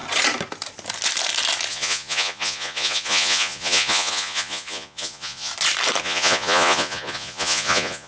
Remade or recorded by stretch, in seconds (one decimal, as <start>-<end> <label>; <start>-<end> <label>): 0.0-1.7 recorded; 1.7-5.5 remade; 5.5-6.0 recorded; 6.0-8.1 remade